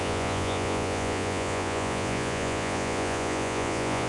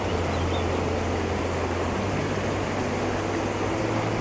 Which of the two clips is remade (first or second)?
first